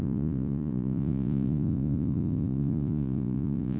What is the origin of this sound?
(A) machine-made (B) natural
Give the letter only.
A